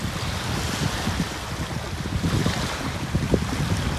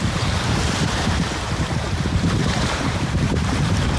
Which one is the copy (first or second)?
second